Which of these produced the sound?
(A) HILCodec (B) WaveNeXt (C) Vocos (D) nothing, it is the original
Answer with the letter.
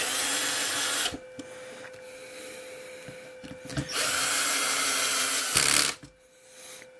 D